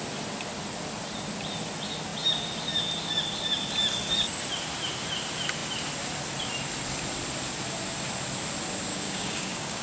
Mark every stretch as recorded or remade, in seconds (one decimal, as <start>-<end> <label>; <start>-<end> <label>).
0.0-8.9 recorded; 8.9-9.8 remade